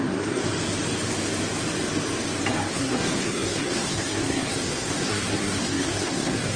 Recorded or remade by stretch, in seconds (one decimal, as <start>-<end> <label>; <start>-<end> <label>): 0.0-0.4 remade; 0.4-2.7 recorded; 2.7-6.6 remade